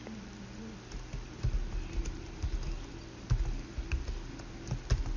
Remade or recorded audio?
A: recorded